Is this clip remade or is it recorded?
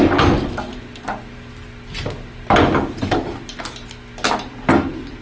recorded